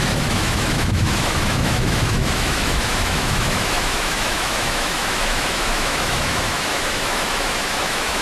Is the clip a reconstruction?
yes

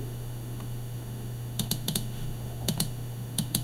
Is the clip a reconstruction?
yes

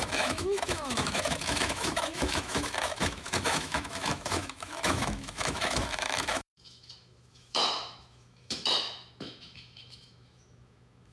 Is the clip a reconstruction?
yes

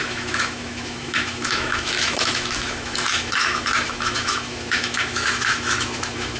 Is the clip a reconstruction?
yes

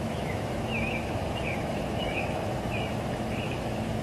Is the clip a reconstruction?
yes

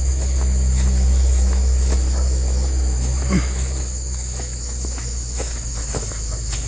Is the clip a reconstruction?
yes